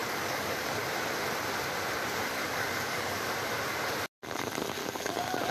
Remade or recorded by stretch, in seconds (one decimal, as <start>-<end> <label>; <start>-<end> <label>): 0.0-0.8 remade; 0.8-2.3 recorded; 2.3-3.3 remade; 3.3-4.8 recorded; 4.8-5.5 remade